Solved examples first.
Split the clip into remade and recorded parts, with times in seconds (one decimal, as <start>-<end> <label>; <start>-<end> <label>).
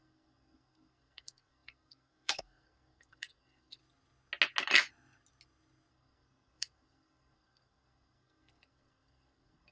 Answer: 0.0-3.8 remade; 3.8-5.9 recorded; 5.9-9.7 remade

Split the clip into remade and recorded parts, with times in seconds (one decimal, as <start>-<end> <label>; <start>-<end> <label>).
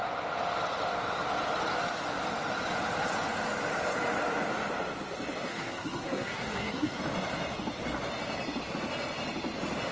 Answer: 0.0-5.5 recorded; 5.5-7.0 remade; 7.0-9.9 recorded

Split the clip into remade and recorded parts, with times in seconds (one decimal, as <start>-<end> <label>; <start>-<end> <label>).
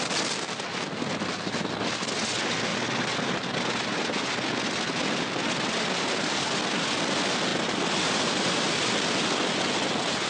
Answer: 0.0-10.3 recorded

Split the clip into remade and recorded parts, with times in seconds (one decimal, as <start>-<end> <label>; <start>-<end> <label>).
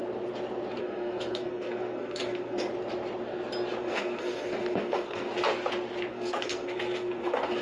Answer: 0.0-0.8 recorded; 0.8-2.7 remade; 2.7-3.8 recorded; 3.8-5.3 remade; 5.3-6.1 recorded; 6.1-7.6 remade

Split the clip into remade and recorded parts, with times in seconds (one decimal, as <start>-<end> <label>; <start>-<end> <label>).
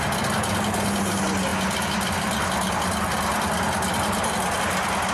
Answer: 0.0-5.1 recorded